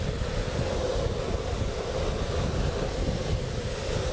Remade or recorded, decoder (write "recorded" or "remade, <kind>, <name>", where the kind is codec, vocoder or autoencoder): recorded